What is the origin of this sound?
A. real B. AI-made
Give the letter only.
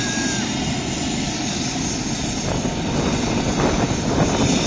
A